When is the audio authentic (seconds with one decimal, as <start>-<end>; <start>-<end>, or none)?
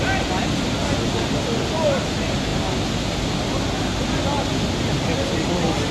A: 0.0-5.9